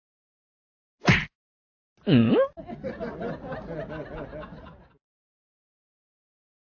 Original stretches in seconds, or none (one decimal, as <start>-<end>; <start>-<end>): 0.0-6.7